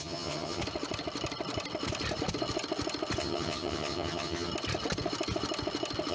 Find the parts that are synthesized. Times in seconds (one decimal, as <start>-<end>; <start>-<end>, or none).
0.0-0.6; 3.2-4.5